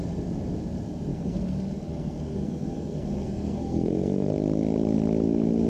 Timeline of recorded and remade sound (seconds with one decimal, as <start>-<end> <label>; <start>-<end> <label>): 0.0-1.1 recorded; 1.1-4.3 remade; 4.3-5.7 recorded